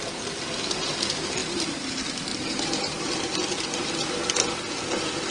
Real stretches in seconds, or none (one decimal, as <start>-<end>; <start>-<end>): 0.0-2.3; 3.2-5.3